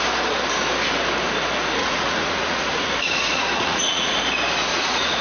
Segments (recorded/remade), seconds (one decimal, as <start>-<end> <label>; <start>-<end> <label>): 0.0-1.8 recorded; 1.8-4.1 remade; 4.1-4.7 recorded; 4.7-5.2 remade